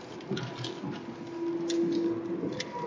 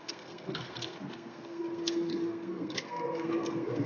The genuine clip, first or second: first